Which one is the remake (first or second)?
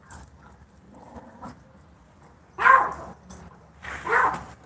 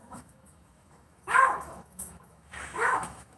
second